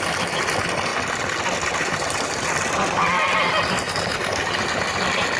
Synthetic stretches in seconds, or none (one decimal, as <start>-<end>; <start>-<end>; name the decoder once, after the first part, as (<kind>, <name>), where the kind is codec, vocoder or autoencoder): none